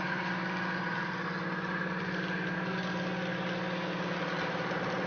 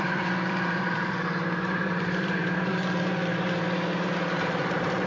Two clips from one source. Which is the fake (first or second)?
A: second